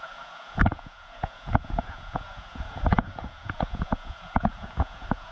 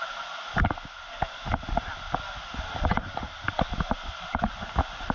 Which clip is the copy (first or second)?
first